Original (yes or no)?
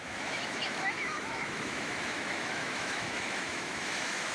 no